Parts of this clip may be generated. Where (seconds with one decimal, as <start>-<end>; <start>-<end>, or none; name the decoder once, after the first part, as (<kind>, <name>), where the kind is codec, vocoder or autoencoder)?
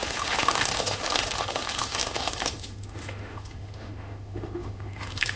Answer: 0.0-5.4 (autoencoder, DAC-VAE)